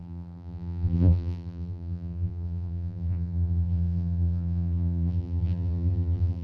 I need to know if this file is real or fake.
fake